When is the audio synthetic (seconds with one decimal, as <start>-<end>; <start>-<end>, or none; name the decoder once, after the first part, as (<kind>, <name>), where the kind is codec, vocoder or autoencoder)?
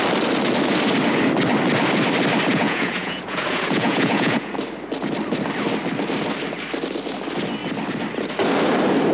2.5-4.5 (vocoder, Vocos)